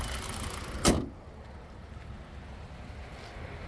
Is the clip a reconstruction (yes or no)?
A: no